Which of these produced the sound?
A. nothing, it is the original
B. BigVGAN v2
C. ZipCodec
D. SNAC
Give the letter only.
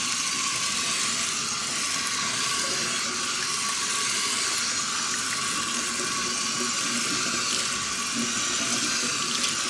A